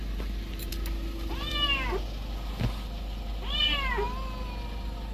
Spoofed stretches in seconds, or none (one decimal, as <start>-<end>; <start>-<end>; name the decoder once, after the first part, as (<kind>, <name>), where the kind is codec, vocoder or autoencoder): none